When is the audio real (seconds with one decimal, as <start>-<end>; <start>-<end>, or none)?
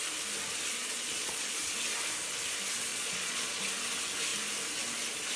0.0-0.8; 1.7-2.9; 3.6-5.4